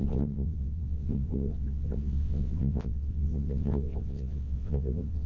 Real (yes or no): no